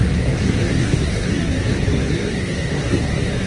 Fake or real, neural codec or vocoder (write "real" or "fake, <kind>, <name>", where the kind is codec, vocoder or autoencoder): fake, codec, SNAC